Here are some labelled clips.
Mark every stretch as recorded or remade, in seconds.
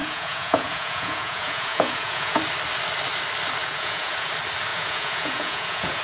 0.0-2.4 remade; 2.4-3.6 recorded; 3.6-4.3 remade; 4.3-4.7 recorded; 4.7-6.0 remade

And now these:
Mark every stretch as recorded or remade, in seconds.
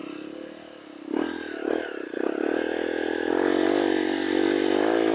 0.0-5.1 recorded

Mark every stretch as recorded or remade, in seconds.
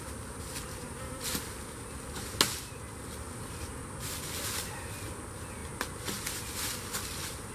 0.0-7.5 recorded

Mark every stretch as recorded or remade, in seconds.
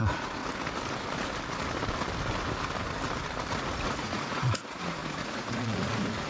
0.0-0.4 remade; 0.4-3.5 recorded; 3.5-6.3 remade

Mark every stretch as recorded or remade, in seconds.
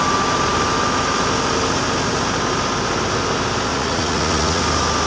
0.0-3.7 recorded; 3.7-4.6 remade; 4.6-5.1 recorded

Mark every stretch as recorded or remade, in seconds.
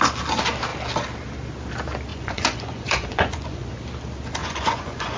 0.0-2.1 recorded; 2.1-3.8 remade; 3.8-4.4 recorded; 4.4-5.2 remade